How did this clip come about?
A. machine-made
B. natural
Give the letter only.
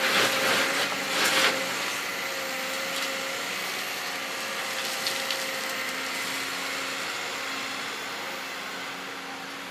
B